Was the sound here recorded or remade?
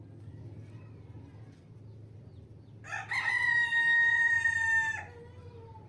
recorded